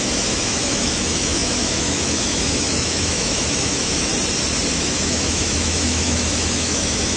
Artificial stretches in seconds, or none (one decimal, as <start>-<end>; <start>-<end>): 0.0-4.1; 4.7-7.2